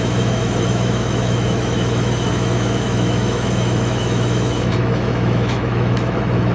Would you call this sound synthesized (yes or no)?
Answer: yes